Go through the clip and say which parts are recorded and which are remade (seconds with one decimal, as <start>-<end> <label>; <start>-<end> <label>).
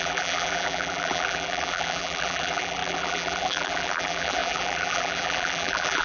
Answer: 0.0-6.0 remade